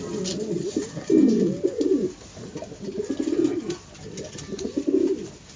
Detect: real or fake real